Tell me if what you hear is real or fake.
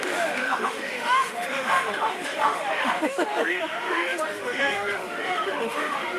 fake